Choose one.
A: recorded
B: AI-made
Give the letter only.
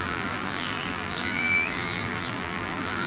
B